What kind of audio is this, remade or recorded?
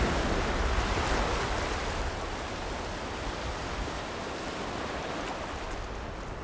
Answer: recorded